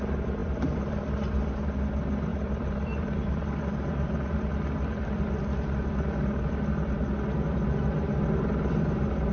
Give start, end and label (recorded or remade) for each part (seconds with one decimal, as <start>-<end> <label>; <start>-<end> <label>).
0.0-0.4 recorded; 0.4-1.8 remade; 1.8-2.3 recorded; 2.3-6.4 remade; 6.4-9.3 recorded

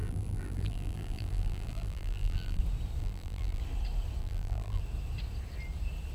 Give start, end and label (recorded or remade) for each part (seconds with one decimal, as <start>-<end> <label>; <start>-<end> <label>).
0.0-2.6 remade; 2.6-3.0 recorded; 3.0-3.6 remade; 3.6-4.2 recorded; 4.2-4.8 remade; 4.8-6.1 recorded

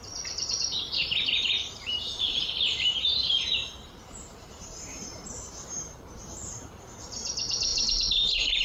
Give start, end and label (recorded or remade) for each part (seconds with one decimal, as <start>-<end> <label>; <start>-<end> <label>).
0.0-1.6 recorded; 1.6-6.8 remade; 6.8-7.7 recorded; 7.7-8.6 remade

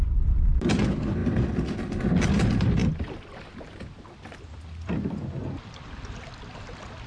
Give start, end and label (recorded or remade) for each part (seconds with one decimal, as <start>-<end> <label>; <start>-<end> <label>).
0.0-1.2 remade; 1.2-2.2 recorded; 2.2-2.8 remade; 2.8-4.4 recorded; 4.4-7.1 remade

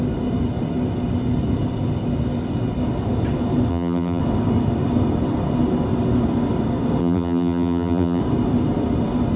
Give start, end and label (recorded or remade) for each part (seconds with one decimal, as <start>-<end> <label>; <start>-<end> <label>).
0.0-3.7 recorded; 3.7-4.2 remade; 4.2-7.0 recorded; 7.0-8.2 remade; 8.2-9.4 recorded

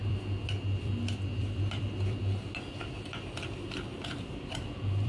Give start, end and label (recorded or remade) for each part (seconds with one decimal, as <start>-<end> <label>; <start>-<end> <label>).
0.0-2.2 remade; 2.2-3.9 recorded; 3.9-5.1 remade

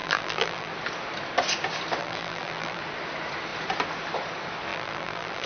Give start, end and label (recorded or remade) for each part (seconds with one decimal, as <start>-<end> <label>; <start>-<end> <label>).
0.0-0.7 remade; 0.7-2.0 recorded; 2.0-2.8 remade; 2.8-4.7 recorded; 4.7-5.5 remade

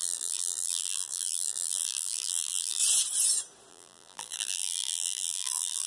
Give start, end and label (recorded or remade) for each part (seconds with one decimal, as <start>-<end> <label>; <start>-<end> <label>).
0.0-2.8 remade; 2.8-3.7 recorded; 3.7-5.9 remade